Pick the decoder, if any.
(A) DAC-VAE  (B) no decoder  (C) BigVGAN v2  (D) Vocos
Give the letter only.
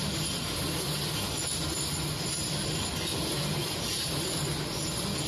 B